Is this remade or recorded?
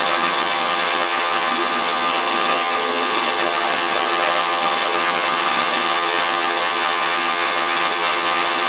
remade